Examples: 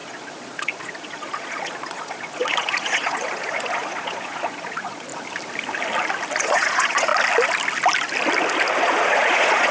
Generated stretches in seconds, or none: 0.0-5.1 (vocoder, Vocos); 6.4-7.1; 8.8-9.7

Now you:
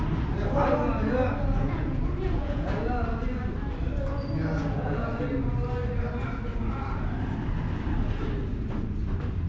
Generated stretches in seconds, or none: 1.5-2.9 (vocoder, Vocos); 4.6-5.2

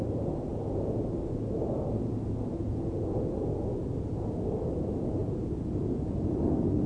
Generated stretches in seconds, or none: 0.5-1.0 (vocoder, Vocos); 2.7-3.2; 5.2-6.2

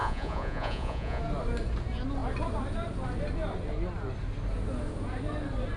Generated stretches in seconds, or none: 0.0-1.2 (vocoder, Vocos)

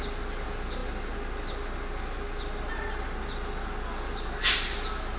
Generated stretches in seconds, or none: none

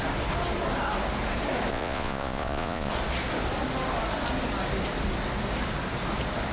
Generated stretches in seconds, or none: 1.7-2.9 (vocoder, Vocos)

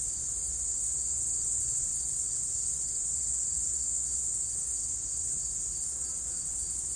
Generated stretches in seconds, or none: 0.0-7.0 (vocoder, Vocos)